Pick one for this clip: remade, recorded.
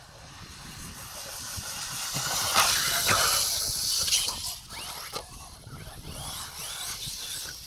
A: recorded